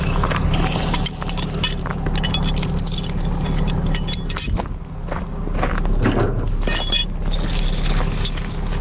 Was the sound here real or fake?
real